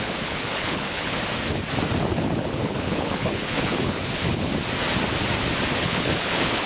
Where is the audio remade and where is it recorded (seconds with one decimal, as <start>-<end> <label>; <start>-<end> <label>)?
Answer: 0.0-1.2 remade; 1.2-2.1 recorded; 2.1-4.5 remade; 4.5-5.8 recorded; 5.8-6.7 remade